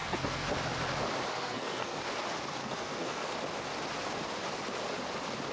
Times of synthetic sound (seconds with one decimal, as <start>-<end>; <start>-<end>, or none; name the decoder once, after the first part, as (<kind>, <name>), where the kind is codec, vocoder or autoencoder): 0.0-0.5 (codec, SNAC); 1.3-2.0; 2.6-3.3